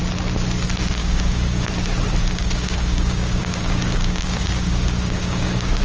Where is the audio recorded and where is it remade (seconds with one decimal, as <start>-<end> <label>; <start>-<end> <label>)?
0.0-1.0 recorded; 1.0-1.7 remade; 1.7-2.2 recorded; 2.2-5.8 remade